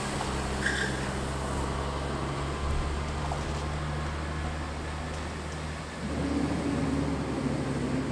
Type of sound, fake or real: real